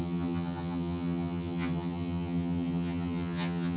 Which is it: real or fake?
fake